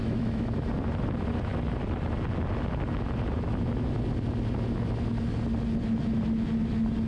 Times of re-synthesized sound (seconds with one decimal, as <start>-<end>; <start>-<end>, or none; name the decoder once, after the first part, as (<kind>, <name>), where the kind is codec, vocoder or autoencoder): 0.0-0.7 (autoencoder, DAC-VAE)